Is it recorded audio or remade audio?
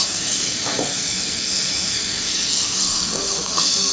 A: remade